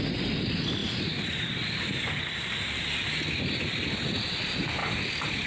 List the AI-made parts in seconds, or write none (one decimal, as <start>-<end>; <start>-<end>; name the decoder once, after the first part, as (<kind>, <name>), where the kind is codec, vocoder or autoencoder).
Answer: none